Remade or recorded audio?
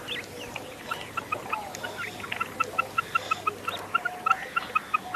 recorded